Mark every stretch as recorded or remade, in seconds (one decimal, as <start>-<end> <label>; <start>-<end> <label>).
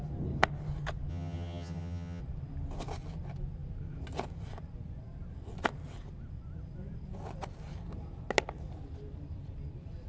0.0-1.1 recorded; 1.1-2.2 remade; 2.2-10.1 recorded